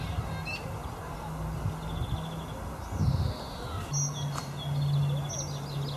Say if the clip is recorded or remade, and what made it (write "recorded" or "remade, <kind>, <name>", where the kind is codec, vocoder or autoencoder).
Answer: recorded